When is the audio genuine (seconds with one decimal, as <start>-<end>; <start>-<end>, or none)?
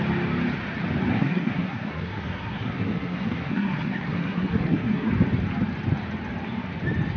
0.0-1.1; 5.1-7.2